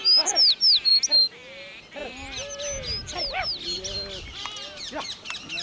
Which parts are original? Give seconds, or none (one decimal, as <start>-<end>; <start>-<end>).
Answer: 0.0-5.6